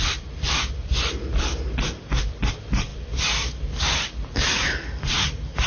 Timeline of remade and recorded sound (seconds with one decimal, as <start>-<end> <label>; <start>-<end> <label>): 0.0-5.7 recorded